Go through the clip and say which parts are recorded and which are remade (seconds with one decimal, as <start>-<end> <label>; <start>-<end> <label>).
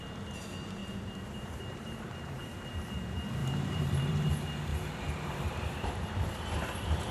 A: 0.0-0.8 recorded; 0.8-2.7 remade; 2.7-3.4 recorded; 3.4-4.3 remade; 4.3-4.7 recorded; 4.7-5.3 remade; 5.3-7.1 recorded